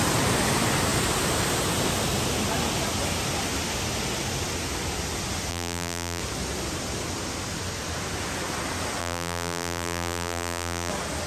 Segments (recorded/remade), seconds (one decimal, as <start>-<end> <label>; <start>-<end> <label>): 0.0-5.5 recorded; 5.5-6.2 remade; 6.2-9.0 recorded; 9.0-10.9 remade; 10.9-11.3 recorded